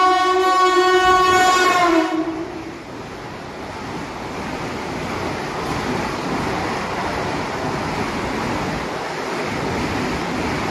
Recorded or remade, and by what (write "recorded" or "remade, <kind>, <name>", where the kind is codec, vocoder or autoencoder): recorded